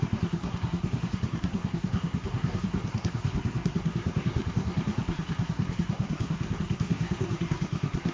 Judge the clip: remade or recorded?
remade